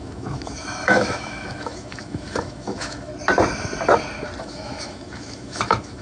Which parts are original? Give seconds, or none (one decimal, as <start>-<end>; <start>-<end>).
3.1-4.4